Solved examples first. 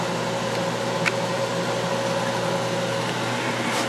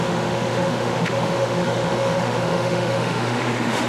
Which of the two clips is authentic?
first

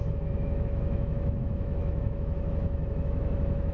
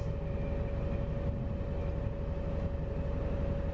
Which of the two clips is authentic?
second